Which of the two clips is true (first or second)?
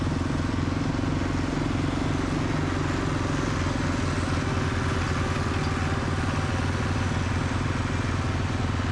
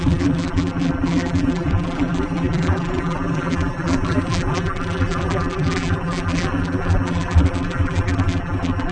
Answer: first